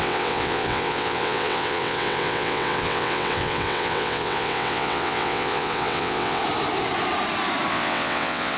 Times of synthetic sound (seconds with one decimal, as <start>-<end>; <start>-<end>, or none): 0.0-6.4; 7.7-8.6